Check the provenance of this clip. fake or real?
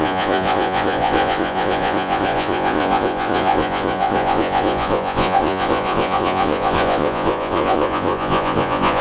fake